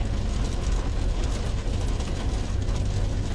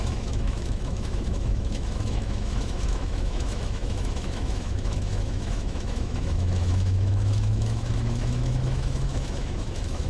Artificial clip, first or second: second